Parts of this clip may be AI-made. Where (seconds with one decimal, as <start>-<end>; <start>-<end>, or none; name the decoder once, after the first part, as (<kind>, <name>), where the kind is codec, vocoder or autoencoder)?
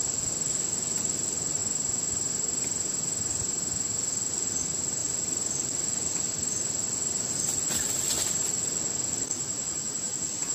0.0-1.6 (vocoder, BigVGAN v2); 4.3-10.5